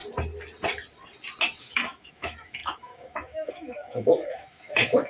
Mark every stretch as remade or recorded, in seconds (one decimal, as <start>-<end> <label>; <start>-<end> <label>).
0.0-1.6 recorded; 1.6-5.1 remade